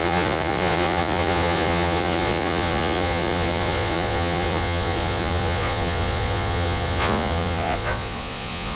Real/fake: fake